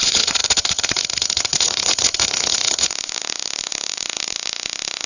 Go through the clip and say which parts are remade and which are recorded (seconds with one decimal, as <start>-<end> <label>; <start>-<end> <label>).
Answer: 0.0-2.9 remade; 2.9-5.1 recorded